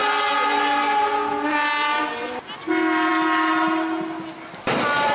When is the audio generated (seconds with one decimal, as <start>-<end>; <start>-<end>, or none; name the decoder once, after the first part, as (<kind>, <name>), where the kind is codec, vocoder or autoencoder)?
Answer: none